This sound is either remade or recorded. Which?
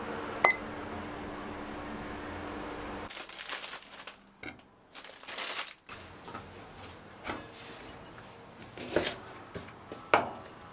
recorded